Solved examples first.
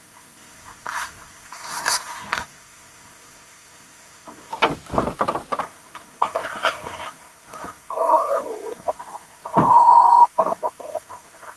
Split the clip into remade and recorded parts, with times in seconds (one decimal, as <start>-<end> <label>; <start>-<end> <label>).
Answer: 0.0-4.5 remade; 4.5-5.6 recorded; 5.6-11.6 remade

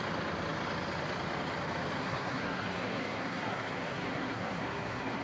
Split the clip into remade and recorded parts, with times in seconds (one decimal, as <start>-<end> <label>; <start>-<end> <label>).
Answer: 0.0-2.0 recorded; 2.0-5.2 remade

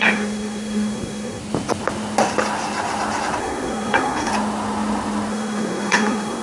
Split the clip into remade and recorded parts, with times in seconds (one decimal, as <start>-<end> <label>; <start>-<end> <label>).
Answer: 0.0-1.4 remade; 1.4-3.4 recorded; 3.4-4.3 remade; 4.3-5.3 recorded; 5.3-6.4 remade

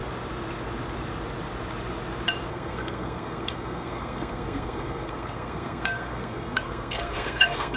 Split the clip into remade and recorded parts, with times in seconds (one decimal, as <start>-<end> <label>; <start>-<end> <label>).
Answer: 0.0-2.5 recorded; 2.5-7.8 remade

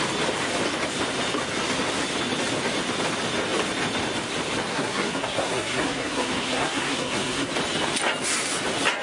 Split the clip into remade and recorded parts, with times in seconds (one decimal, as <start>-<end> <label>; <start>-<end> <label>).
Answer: 0.0-4.7 recorded; 4.7-7.5 remade; 7.5-9.0 recorded

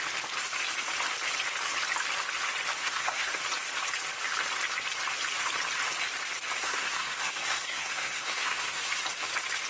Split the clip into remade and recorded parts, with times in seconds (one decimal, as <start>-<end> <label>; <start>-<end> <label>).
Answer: 0.0-2.8 recorded; 2.8-3.4 remade; 3.4-6.6 recorded; 6.6-9.0 remade; 9.0-9.7 recorded